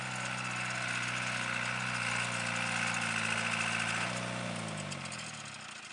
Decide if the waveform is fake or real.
real